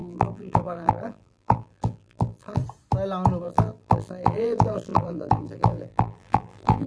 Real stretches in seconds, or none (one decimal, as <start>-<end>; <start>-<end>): 2.6-3.4